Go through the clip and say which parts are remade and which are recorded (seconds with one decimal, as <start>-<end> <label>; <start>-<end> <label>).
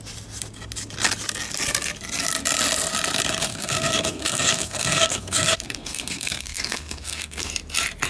0.0-3.5 recorded; 3.5-7.5 remade; 7.5-8.1 recorded